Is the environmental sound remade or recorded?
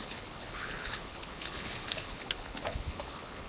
remade